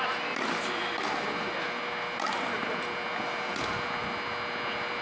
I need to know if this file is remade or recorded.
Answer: recorded